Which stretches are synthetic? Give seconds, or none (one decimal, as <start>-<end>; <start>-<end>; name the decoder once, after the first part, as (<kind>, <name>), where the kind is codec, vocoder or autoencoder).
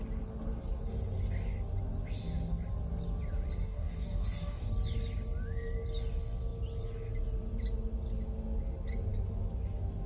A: 3.6-4.7 (codec, DAC)